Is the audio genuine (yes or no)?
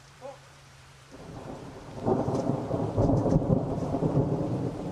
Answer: no